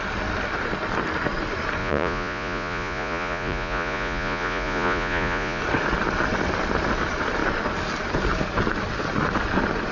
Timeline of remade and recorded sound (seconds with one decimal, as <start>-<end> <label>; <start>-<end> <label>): 0.0-1.8 recorded; 1.8-5.6 remade; 5.6-9.9 recorded